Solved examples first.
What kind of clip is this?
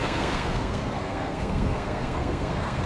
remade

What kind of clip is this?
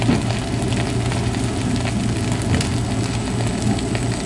recorded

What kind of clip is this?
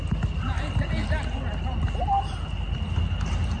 recorded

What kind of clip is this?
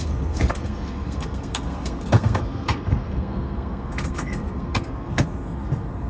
remade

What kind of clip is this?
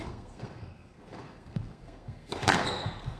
remade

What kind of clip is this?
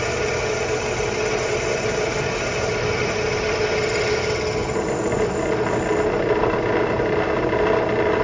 recorded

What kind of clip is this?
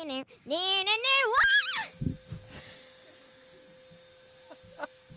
recorded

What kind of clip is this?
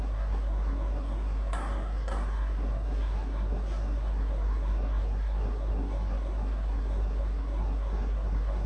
remade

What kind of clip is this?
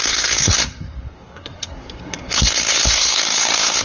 remade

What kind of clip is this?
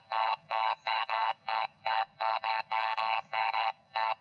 remade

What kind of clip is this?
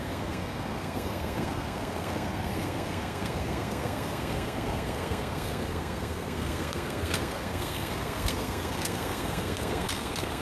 remade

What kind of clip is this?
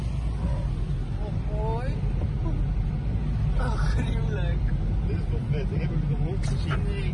recorded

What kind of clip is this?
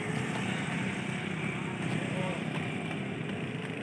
recorded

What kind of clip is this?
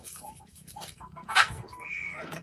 remade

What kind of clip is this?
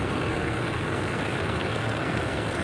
remade